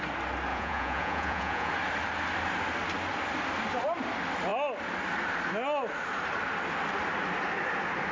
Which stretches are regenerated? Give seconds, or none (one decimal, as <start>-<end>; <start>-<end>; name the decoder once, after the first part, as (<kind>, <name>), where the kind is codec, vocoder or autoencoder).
0.5-1.7 (vocoder, Vocos)